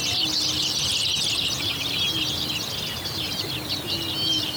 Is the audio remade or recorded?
recorded